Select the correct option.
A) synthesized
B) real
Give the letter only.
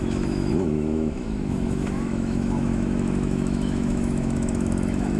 A